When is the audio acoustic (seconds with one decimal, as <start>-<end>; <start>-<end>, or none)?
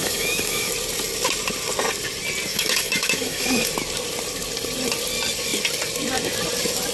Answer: 0.7-2.5; 3.7-6.9